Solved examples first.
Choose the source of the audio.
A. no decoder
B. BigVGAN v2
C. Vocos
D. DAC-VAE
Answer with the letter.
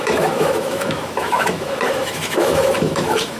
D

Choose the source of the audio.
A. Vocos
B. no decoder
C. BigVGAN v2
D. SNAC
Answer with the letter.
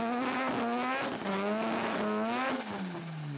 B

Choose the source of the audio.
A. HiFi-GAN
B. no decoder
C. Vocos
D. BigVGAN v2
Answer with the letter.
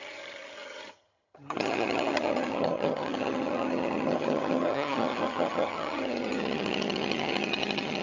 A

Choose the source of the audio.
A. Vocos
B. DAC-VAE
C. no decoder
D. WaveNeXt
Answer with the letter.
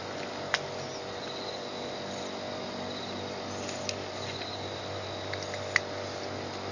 C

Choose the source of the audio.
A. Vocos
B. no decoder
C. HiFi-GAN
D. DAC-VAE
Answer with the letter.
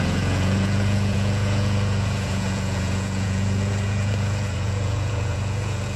A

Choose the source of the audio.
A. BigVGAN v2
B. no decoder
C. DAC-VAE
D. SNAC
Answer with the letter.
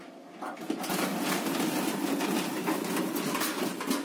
B